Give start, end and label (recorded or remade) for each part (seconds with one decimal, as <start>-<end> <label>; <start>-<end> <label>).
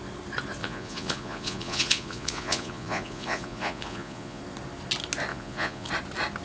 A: 0.0-0.6 recorded; 0.6-4.4 remade; 4.4-5.3 recorded; 5.3-5.9 remade; 5.9-6.4 recorded